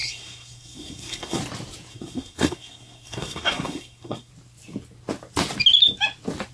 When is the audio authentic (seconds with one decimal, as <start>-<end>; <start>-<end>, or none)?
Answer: 1.4-1.9; 4.3-6.5